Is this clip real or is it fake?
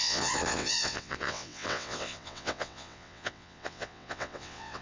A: fake